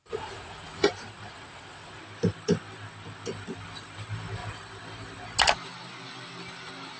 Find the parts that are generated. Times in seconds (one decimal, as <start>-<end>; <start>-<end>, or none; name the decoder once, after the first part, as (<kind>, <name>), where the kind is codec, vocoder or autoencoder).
0.0-2.0 (vocoder, Vocos)

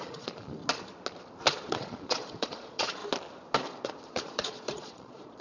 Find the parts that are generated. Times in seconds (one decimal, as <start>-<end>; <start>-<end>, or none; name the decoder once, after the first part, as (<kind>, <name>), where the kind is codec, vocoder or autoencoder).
0.0-0.6 (vocoder, Vocos); 1.7-3.0; 3.8-5.4

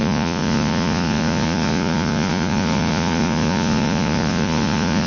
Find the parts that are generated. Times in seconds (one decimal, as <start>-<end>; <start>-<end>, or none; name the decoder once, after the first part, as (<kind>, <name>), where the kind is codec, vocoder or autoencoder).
0.0-5.1 (vocoder, Vocos)

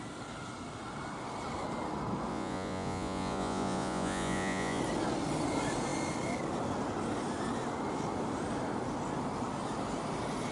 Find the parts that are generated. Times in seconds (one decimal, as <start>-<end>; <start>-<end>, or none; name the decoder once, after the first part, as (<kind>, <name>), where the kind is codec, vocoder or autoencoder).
2.3-4.8 (vocoder, Vocos)

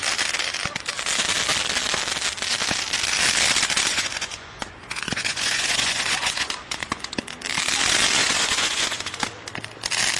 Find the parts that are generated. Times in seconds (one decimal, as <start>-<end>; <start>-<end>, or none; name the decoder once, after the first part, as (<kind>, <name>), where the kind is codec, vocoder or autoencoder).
3.9-7.2 (vocoder, Vocos); 8.2-9.3

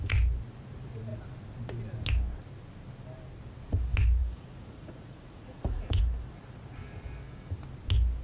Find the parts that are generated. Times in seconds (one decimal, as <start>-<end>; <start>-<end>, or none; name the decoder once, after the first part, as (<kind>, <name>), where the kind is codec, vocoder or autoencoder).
4.2-6.0 (vocoder, Vocos)